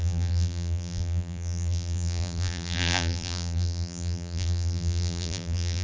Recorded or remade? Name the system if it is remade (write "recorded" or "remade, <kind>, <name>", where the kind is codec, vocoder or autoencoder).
remade, vocoder, BigVGAN v2